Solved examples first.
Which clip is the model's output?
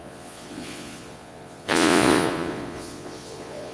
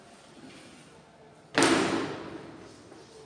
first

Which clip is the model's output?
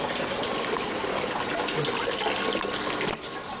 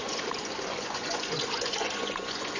second